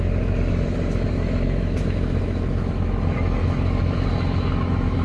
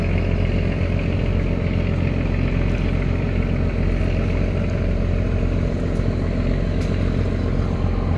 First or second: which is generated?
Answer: first